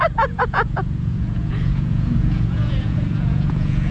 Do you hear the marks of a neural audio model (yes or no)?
yes